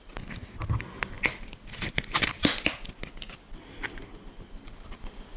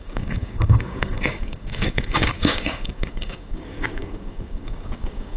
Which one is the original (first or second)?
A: first